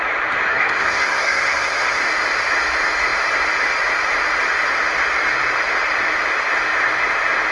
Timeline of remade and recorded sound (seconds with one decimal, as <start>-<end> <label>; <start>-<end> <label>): 0.0-0.5 recorded; 0.5-2.0 remade; 2.0-7.5 recorded